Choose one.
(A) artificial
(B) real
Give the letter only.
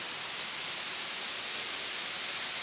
B